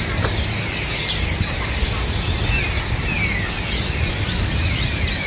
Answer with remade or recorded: recorded